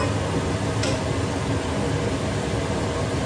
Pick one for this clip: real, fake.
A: real